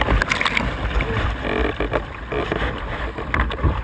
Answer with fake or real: real